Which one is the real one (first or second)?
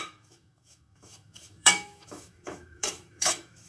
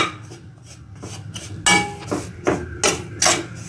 second